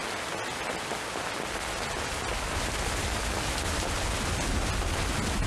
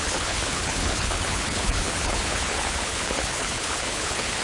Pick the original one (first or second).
first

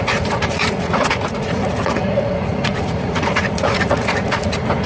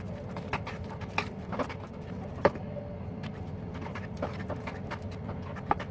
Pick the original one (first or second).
second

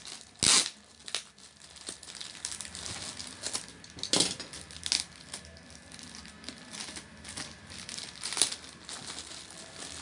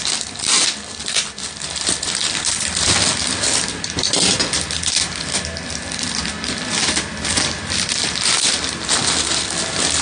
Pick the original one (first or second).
first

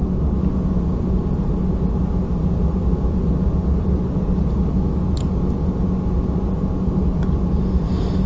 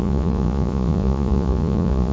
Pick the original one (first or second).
first